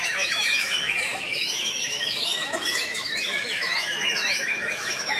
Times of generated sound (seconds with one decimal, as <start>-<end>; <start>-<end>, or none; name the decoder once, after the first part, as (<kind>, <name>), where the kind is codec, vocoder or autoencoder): 0.0-5.2 (autoencoder, DAC-VAE)